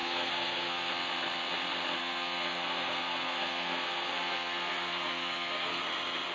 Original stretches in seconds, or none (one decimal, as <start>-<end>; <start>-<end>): 0.9-2.0; 5.8-6.3